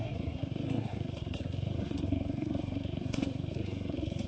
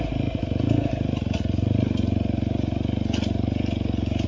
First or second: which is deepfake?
first